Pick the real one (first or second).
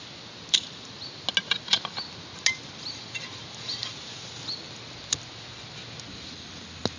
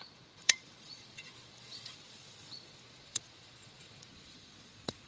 first